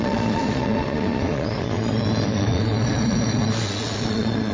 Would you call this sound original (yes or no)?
no